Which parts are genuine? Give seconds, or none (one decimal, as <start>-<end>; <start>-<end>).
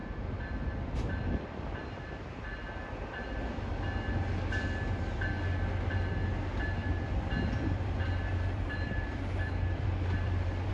0.0-6.8